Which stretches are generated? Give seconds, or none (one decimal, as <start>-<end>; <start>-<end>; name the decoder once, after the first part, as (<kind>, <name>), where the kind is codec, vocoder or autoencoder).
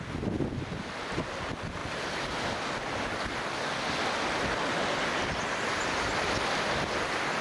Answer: none